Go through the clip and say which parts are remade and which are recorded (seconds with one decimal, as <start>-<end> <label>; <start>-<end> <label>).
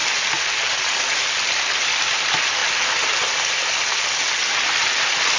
0.0-5.4 recorded